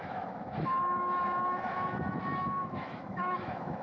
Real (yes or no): no